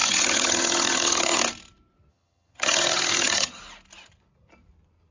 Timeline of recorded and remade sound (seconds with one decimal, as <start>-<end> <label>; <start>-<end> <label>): 0.0-1.4 remade; 1.4-2.1 recorded; 2.1-3.6 remade; 3.6-5.1 recorded